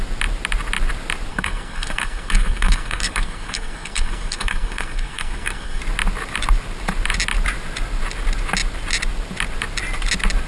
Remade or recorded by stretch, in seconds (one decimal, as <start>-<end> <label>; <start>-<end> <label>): 0.0-1.3 recorded; 1.3-5.8 remade; 5.8-10.5 recorded